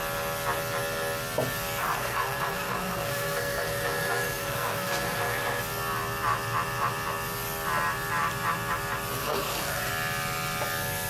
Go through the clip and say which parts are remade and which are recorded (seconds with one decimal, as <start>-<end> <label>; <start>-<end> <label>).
0.0-1.8 recorded; 1.8-5.6 remade; 5.6-9.2 recorded; 9.2-9.9 remade; 9.9-11.1 recorded